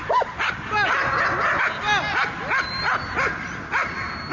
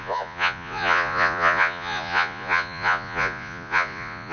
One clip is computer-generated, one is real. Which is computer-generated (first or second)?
second